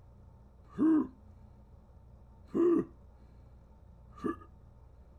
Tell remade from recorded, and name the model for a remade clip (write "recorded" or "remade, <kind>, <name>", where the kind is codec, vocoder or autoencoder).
recorded